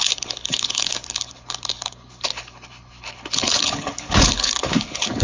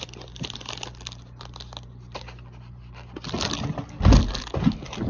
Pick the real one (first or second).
second